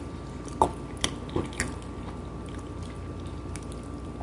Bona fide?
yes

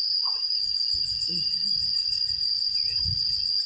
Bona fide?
yes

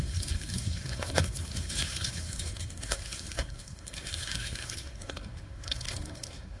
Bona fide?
no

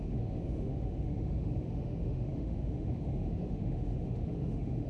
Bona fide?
no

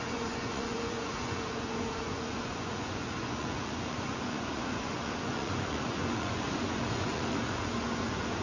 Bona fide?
no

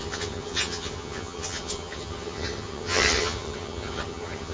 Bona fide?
no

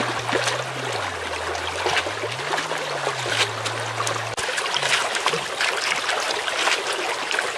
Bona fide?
yes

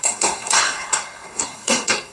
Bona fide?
no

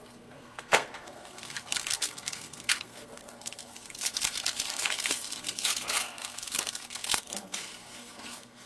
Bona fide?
no